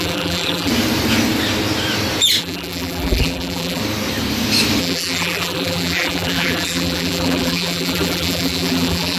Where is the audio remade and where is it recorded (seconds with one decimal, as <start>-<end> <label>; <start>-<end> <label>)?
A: 0.0-0.7 remade; 0.7-2.4 recorded; 2.4-3.8 remade; 3.8-4.8 recorded; 4.8-9.2 remade